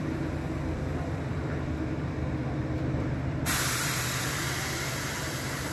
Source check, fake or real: fake